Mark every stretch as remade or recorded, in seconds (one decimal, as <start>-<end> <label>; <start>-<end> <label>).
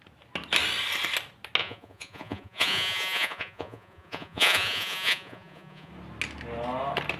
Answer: 0.0-1.6 recorded; 1.6-5.9 remade; 5.9-7.2 recorded